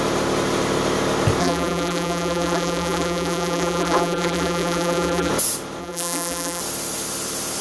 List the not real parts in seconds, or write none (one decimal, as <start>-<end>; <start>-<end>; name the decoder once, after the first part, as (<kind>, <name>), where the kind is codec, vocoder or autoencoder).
1.4-5.3 (vocoder, BigVGAN v2); 5.8-6.6